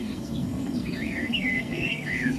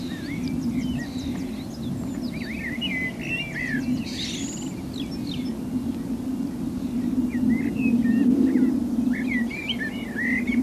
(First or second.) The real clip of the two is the second